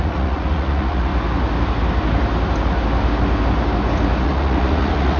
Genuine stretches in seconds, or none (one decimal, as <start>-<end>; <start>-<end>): 1.1-4.2

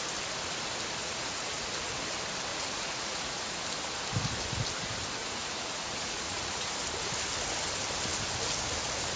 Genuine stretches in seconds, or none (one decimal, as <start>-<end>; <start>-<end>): 0.0-1.0; 1.9-2.5; 3.5-5.2; 6.7-9.2

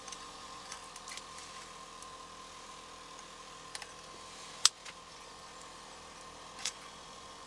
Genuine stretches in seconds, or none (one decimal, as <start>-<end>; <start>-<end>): 0.8-5.1; 5.5-6.6

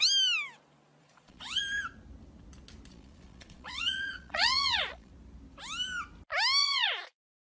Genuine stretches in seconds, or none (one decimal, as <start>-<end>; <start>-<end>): 0.0-1.0; 1.6-2.9; 5.1-6.6

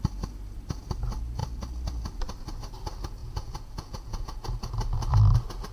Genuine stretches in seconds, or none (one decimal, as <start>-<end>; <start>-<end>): 0.0-3.2; 4.4-5.7

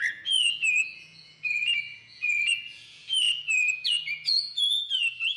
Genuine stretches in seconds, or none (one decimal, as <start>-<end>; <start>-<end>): none